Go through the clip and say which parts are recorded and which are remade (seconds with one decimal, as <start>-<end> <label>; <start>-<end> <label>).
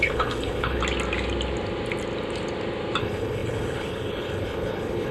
0.0-0.8 remade; 0.8-3.0 recorded; 3.0-5.1 remade